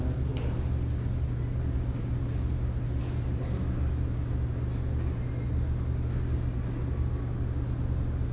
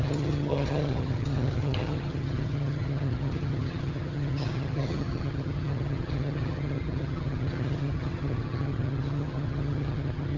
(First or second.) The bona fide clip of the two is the first